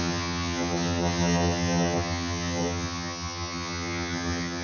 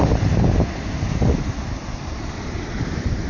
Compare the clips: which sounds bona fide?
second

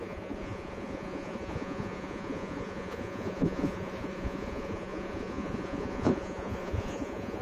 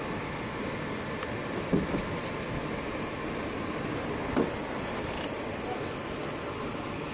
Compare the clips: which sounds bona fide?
second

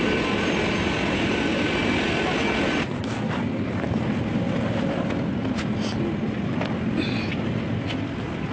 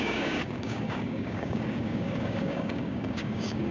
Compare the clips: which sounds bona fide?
first